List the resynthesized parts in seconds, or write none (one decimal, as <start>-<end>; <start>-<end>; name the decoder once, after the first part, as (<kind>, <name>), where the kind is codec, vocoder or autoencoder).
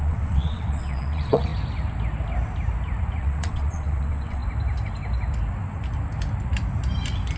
0.0-1.5 (vocoder, WaveNeXt); 3.2-4.4